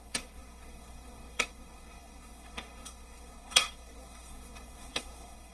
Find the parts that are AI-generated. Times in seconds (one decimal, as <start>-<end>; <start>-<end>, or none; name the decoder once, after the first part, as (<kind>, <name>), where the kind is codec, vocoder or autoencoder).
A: 0.0-5.5 (codec, SNAC)